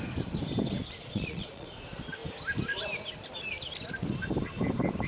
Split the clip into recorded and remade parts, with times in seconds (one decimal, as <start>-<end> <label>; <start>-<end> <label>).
0.0-1.0 recorded; 1.0-1.7 remade; 1.7-5.1 recorded